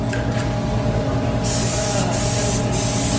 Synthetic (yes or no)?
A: no